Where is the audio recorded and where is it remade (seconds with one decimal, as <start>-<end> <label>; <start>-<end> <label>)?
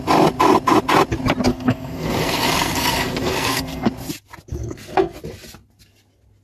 0.0-1.5 recorded; 1.5-3.9 remade; 3.9-4.5 recorded; 4.5-5.2 remade; 5.2-6.4 recorded